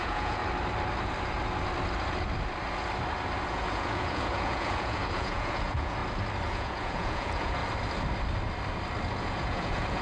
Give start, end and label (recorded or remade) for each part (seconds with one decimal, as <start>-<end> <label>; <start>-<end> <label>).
0.0-0.4 remade; 0.4-3.5 recorded; 3.5-6.0 remade; 6.0-6.5 recorded; 6.5-7.6 remade; 7.6-9.1 recorded; 9.1-10.0 remade